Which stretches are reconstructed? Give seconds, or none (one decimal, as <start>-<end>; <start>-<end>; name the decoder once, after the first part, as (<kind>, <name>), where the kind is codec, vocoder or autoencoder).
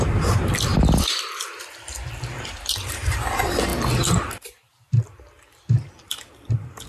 0.0-6.9 (vocoder, BigVGAN v2)